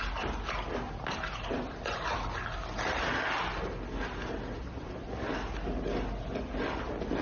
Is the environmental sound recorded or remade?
recorded